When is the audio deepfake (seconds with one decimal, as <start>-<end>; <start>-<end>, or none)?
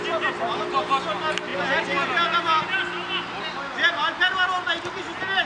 none